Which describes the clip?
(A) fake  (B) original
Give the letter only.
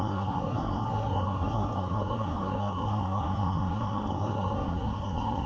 A